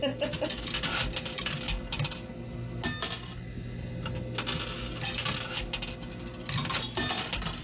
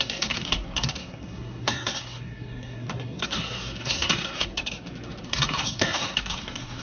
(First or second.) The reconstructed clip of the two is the second